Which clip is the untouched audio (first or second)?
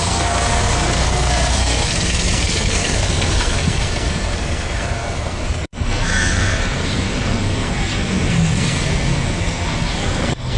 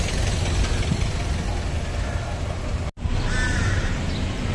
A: second